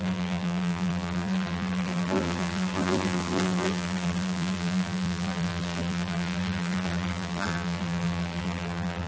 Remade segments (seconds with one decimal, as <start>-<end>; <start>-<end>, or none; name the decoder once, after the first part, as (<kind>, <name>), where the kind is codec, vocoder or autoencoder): 0.0-9.1 (vocoder, BigVGAN v2)